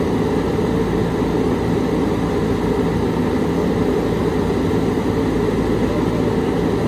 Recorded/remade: recorded